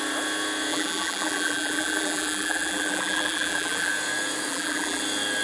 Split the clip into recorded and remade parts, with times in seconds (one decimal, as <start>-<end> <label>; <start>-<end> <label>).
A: 0.0-0.7 recorded; 0.7-3.9 remade; 3.9-4.5 recorded; 4.5-5.0 remade; 5.0-5.4 recorded